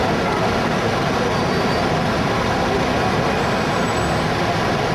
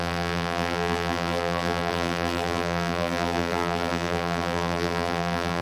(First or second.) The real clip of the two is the first